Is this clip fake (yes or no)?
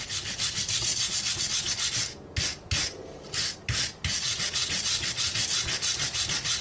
no